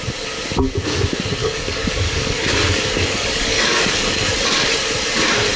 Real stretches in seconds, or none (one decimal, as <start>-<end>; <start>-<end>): 0.0-1.4; 4.5-5.6